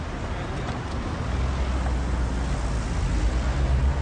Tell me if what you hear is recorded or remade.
recorded